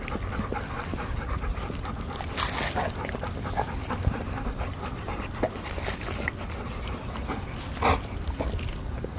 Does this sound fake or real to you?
real